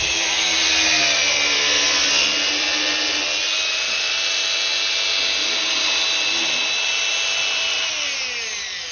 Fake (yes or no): no